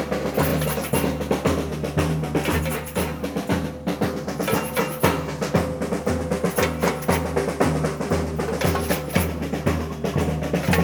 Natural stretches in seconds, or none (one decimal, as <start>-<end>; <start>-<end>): 0.0-10.8